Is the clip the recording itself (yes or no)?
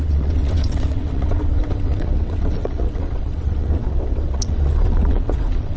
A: no